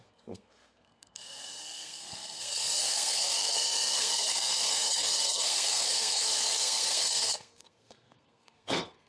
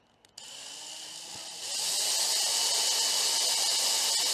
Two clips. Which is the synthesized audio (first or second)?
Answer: first